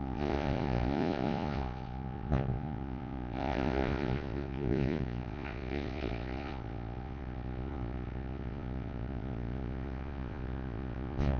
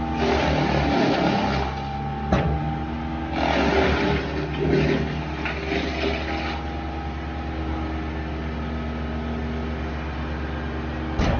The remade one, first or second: first